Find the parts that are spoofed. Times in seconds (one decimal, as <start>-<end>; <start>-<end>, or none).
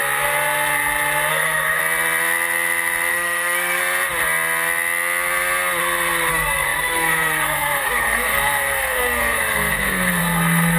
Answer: 1.3-1.8; 3.1-3.8; 6.3-10.8